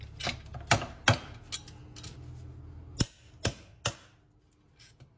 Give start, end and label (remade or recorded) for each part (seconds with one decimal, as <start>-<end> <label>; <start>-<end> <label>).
0.0-5.2 recorded